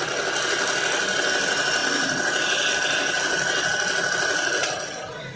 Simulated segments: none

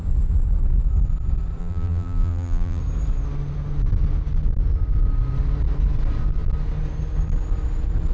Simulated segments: 1.6-2.8 (vocoder, BigVGAN v2)

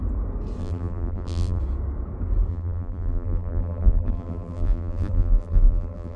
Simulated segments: 0.6-1.6 (vocoder, BigVGAN v2); 2.5-6.2

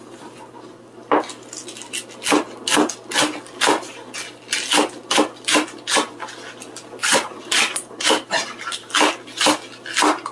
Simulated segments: 7.0-8.9 (vocoder, BigVGAN v2)

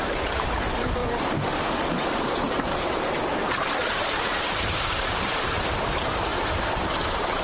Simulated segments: 0.0-7.4 (vocoder, BigVGAN v2)

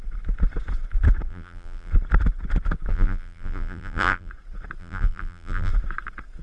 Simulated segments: 1.3-1.9 (vocoder, BigVGAN v2); 2.9-4.3; 4.8-5.7